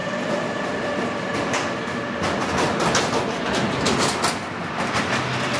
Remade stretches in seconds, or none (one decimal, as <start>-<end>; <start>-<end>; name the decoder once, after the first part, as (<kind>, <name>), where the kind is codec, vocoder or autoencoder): none